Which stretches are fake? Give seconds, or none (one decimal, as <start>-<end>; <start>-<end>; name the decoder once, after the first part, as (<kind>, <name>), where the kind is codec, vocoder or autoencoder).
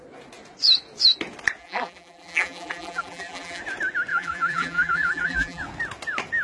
1.6-3.6 (vocoder, BigVGAN v2); 4.1-5.6